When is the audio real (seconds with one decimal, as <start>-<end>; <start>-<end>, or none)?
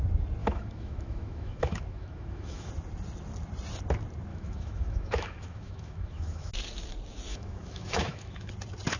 0.0-0.4; 2.7-4.3; 6.5-7.3; 8.5-9.0